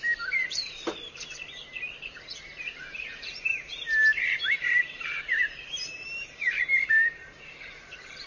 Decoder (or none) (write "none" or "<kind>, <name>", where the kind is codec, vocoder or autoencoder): vocoder, BigVGAN v2